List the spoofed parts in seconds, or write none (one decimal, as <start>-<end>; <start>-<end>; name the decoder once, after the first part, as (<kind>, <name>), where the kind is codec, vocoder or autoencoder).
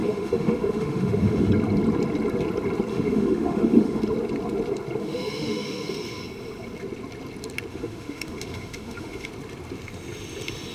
0.0-1.5 (autoencoder, DAC-VAE); 2.9-4.0; 5.0-6.2; 7.7-9.3